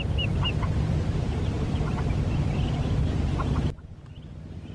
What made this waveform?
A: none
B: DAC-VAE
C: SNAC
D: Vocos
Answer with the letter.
A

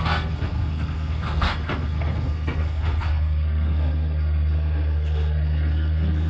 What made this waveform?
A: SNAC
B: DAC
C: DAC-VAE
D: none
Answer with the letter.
A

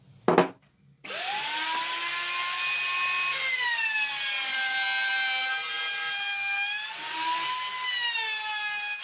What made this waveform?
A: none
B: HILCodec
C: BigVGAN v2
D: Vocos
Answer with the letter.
A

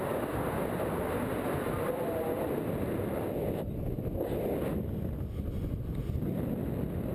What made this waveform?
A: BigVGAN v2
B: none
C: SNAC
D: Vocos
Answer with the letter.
B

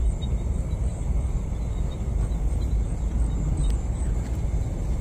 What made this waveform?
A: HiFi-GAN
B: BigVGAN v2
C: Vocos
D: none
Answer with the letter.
B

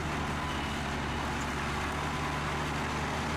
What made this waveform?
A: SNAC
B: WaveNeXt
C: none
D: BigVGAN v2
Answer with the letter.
C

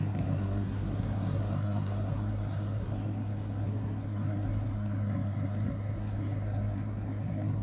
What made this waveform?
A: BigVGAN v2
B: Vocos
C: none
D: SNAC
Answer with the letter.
D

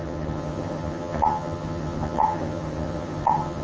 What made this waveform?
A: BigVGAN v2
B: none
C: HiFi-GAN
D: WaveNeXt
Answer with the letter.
C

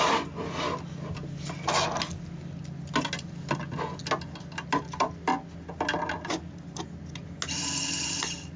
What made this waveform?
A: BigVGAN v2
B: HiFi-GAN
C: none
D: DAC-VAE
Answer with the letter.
C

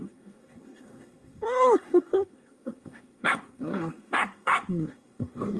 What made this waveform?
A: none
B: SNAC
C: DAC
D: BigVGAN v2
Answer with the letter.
B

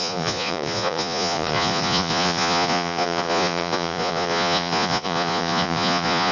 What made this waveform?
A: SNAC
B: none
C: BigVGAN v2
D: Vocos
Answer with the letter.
D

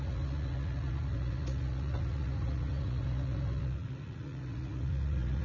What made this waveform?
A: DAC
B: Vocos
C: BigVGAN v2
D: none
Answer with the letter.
B